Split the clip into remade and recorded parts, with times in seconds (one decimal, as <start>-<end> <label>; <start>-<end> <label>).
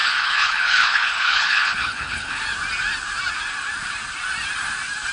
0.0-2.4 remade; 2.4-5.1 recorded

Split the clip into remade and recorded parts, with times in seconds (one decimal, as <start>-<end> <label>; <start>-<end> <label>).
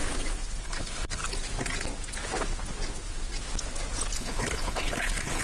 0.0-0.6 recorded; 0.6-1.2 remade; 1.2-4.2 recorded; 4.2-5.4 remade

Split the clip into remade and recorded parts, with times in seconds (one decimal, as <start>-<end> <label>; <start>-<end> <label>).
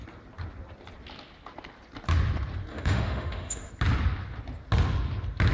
0.0-2.7 recorded; 2.7-3.7 remade; 3.7-5.5 recorded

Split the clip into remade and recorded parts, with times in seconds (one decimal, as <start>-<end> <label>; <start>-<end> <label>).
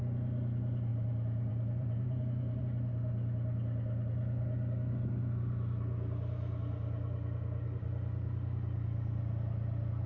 0.0-0.9 recorded; 0.9-2.6 remade; 2.6-10.1 recorded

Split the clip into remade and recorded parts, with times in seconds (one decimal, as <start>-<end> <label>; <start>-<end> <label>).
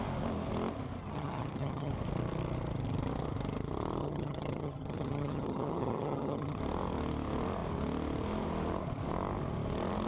0.0-1.0 recorded; 1.0-1.9 remade; 1.9-4.0 recorded; 4.0-6.6 remade; 6.6-10.1 recorded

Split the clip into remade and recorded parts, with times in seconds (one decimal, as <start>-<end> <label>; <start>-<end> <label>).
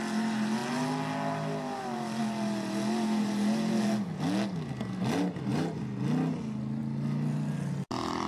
0.0-8.3 recorded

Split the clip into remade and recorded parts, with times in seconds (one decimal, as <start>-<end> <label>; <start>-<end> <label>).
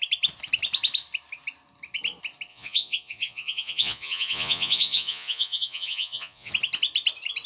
0.0-2.5 recorded; 2.5-6.5 remade; 6.5-7.5 recorded